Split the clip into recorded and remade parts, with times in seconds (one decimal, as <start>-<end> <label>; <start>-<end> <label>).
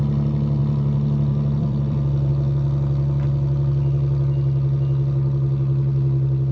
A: 0.0-0.6 recorded; 0.6-2.3 remade; 2.3-6.5 recorded